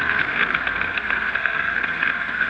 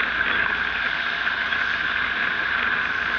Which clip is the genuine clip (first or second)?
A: second